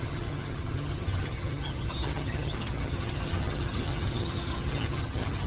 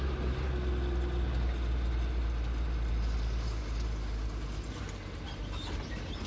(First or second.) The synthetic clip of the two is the first